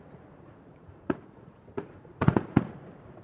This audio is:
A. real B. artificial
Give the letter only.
B